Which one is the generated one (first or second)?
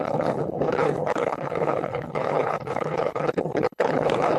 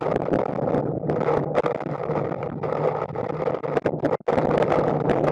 first